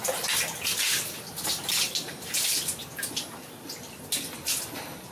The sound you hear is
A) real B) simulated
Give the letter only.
A